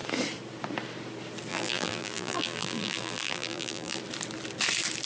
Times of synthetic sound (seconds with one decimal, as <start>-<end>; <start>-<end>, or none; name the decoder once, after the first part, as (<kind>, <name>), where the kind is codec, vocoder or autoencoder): 1.5-4.0 (vocoder, BigVGAN v2)